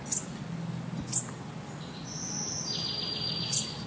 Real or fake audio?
real